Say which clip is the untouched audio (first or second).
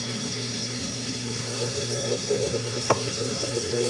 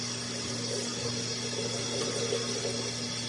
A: second